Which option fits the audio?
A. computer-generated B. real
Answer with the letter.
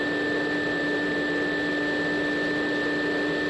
B